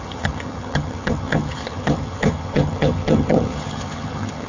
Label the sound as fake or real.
fake